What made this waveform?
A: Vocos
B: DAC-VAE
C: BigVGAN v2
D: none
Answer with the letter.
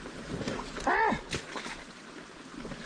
D